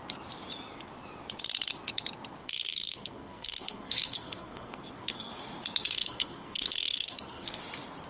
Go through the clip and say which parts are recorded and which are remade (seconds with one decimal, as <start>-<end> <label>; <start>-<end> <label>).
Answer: 0.0-2.4 recorded; 2.4-5.3 remade; 5.3-5.8 recorded; 5.8-7.6 remade; 7.6-8.1 recorded